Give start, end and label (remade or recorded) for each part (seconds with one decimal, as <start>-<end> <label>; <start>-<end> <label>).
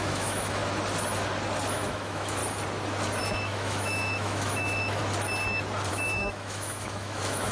0.0-0.6 remade; 0.6-1.7 recorded; 1.7-2.4 remade; 2.4-3.2 recorded; 3.2-5.0 remade; 5.0-5.9 recorded; 5.9-7.5 remade